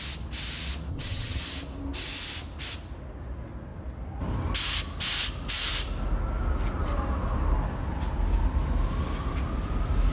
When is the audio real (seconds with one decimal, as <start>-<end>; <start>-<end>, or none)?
0.0-0.9; 1.4-10.1